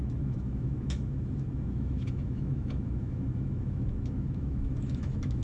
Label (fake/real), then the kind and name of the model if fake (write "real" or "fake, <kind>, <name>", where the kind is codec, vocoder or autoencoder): fake, autoencoder, DAC-VAE